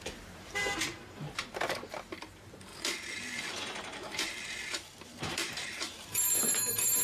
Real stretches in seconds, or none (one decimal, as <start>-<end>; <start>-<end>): none